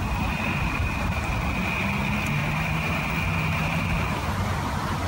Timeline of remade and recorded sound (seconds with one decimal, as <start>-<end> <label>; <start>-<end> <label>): 0.0-0.8 recorded; 0.8-1.3 remade; 1.3-2.4 recorded; 2.4-3.1 remade; 3.1-5.1 recorded

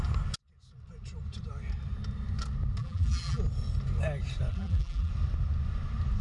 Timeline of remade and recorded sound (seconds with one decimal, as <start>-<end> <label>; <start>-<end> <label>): 0.0-2.8 recorded; 2.8-3.4 remade; 3.4-4.5 recorded; 4.5-5.1 remade; 5.1-6.2 recorded